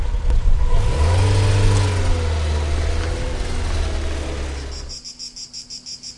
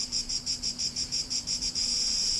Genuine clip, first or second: first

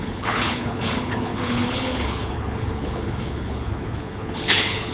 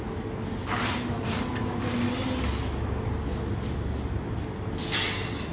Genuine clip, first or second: second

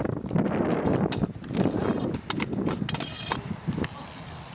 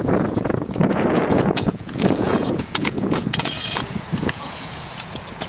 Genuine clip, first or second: first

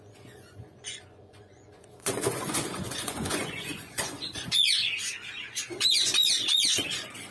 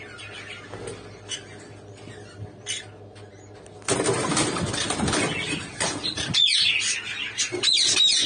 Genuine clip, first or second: second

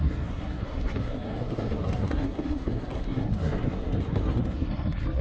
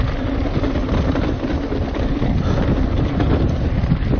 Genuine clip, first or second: second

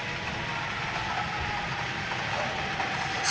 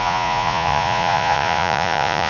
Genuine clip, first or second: first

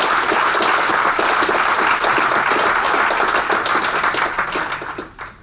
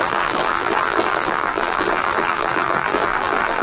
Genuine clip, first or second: first